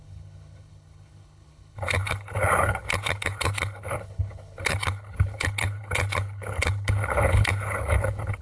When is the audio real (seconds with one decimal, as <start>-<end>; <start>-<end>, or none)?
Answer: none